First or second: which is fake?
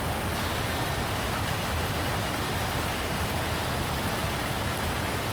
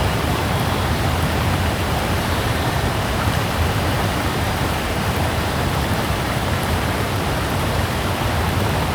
second